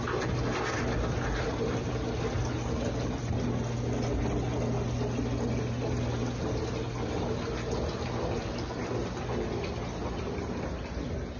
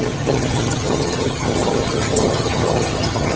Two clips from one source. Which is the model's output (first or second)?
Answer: second